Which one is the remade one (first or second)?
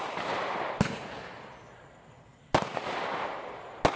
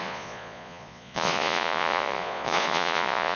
second